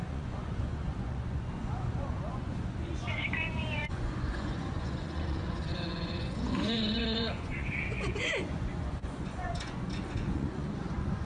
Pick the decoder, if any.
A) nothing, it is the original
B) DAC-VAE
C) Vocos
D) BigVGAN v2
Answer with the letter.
C